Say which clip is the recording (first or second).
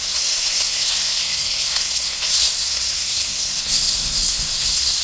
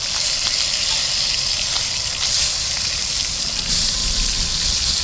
second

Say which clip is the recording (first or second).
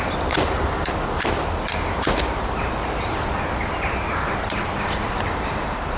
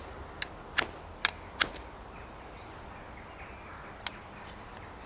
second